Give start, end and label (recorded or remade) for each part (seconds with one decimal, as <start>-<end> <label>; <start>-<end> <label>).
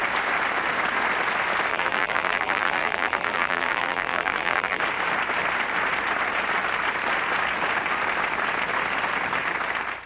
0.0-1.7 recorded; 1.7-4.8 remade; 4.8-10.1 recorded